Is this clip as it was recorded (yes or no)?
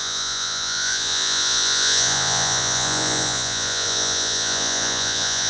no